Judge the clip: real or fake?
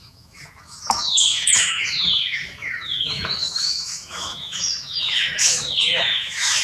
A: fake